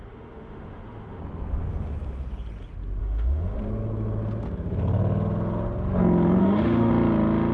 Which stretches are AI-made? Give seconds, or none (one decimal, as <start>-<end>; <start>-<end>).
0.0-1.2; 3.0-3.6; 6.4-6.9